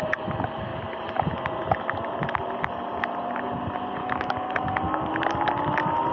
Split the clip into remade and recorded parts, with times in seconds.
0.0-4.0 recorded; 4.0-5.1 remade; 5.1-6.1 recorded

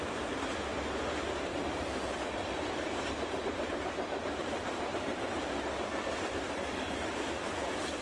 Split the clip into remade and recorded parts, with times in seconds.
0.0-8.0 remade

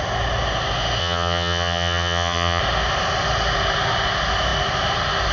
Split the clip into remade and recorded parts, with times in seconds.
0.0-1.0 recorded; 1.0-2.6 remade; 2.6-5.3 recorded